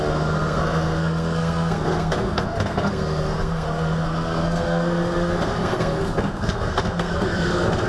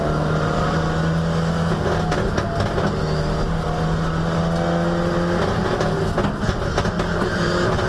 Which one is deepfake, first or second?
first